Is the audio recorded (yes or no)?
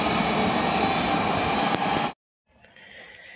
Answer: yes